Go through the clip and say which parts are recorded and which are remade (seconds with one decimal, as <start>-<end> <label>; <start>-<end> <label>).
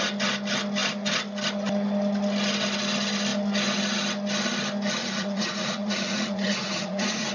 0.0-5.0 recorded; 5.0-7.3 remade